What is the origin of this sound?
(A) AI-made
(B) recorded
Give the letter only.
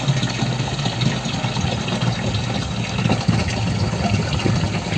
B